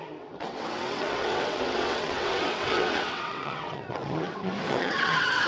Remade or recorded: remade